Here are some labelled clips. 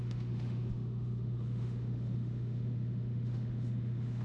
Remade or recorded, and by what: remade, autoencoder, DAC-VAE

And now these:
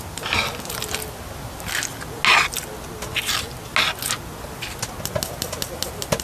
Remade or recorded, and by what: recorded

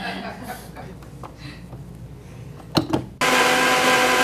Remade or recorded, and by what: recorded